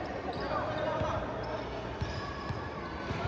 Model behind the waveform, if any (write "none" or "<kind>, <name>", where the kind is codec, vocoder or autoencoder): none